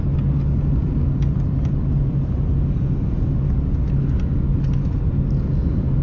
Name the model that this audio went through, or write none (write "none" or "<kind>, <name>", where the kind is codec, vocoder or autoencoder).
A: none